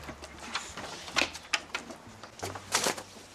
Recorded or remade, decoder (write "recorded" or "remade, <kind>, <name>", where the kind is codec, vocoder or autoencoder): recorded